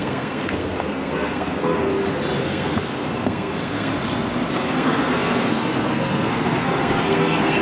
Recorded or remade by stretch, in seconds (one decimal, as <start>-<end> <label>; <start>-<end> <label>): 0.0-1.9 remade; 1.9-2.4 recorded; 2.4-3.9 remade; 3.9-4.5 recorded; 4.5-7.6 remade